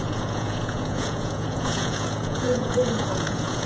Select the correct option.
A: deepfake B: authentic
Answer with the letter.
A